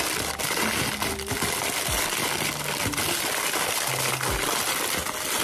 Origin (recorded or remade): recorded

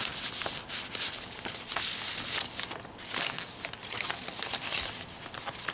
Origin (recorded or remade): recorded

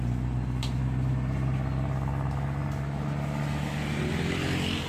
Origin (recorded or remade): recorded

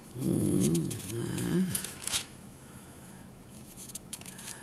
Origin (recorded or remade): remade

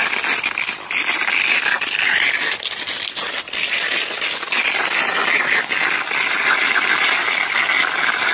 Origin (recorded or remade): recorded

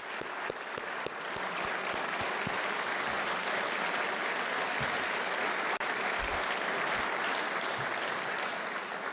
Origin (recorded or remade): recorded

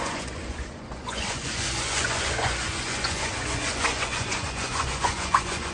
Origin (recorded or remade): remade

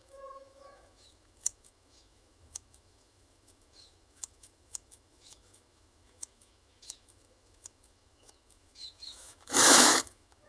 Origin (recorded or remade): remade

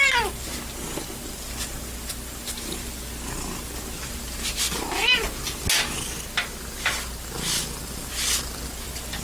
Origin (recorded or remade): recorded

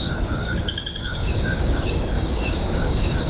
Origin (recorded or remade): remade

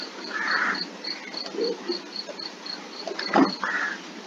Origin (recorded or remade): recorded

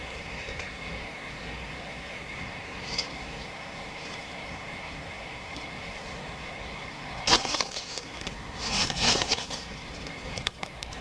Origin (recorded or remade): remade